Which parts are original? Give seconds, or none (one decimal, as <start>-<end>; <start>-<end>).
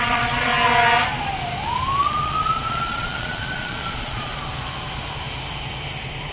0.5-2.0; 4.3-6.3